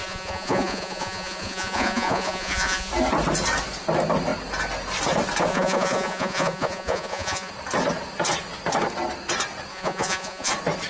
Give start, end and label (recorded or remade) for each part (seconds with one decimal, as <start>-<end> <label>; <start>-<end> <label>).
0.0-2.9 remade; 2.9-5.5 recorded; 5.5-7.5 remade; 7.5-9.7 recorded; 9.7-10.5 remade; 10.5-10.9 recorded